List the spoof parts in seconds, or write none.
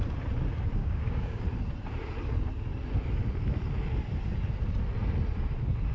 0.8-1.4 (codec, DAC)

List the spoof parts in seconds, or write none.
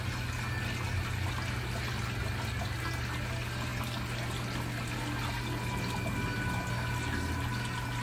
none